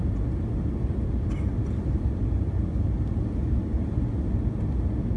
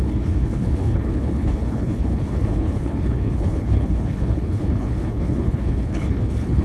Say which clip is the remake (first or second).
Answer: second